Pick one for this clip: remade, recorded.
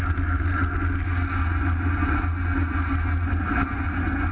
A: recorded